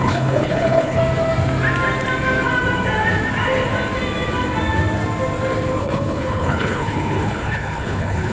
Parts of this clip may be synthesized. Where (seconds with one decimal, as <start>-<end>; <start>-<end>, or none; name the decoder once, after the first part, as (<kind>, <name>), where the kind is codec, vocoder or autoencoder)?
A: 0.0-1.0 (codec, HILCodec); 5.8-8.3